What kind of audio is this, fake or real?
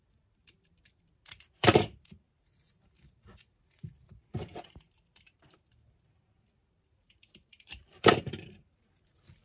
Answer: fake